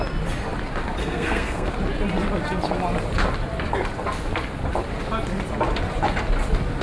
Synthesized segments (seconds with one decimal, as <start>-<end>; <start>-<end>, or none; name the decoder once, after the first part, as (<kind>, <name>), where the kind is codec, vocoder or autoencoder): 1.0-1.7 (codec, SNAC)